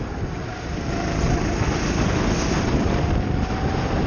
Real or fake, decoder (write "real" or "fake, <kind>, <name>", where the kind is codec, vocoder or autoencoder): real